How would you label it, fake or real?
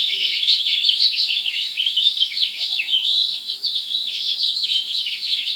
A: fake